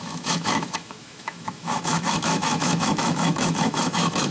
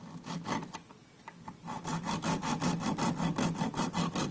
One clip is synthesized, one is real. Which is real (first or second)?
second